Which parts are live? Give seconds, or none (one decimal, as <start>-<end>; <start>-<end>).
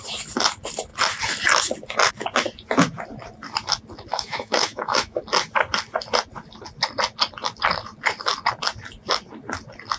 0.0-4.1; 5.2-10.0